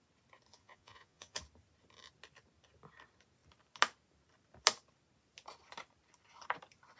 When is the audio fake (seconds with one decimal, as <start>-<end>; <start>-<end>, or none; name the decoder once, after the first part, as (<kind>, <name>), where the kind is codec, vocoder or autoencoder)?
0.5-1.4 (vocoder, Vocos)